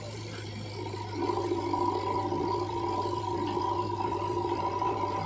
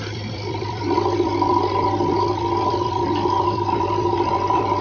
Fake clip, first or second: second